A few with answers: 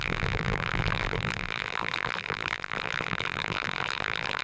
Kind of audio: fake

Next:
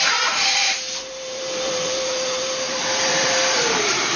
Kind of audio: fake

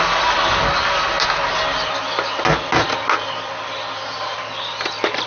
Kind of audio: real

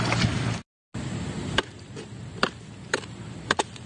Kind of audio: real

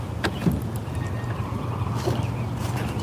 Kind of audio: real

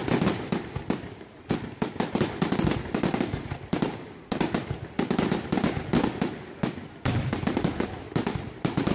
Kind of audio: real